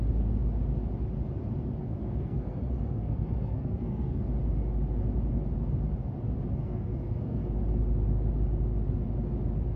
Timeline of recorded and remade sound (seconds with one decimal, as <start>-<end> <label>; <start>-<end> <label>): 0.0-1.8 recorded; 1.8-4.2 remade; 4.2-6.6 recorded; 6.6-7.5 remade; 7.5-9.8 recorded